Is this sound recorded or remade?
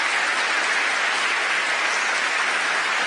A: recorded